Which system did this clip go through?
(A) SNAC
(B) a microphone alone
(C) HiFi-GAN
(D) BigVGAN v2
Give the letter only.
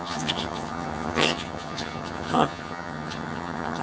C